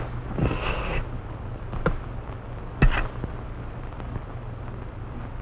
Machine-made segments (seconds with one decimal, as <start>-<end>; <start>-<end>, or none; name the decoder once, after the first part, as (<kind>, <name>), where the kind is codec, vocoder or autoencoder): 0.4-1.0 (codec, SNAC)